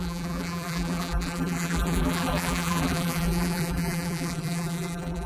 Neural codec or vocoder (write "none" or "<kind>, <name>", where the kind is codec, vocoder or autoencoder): vocoder, BigVGAN v2